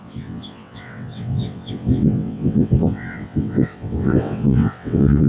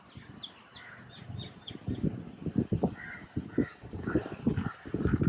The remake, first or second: first